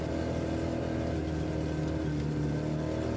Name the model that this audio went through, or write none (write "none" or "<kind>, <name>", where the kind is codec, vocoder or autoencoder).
none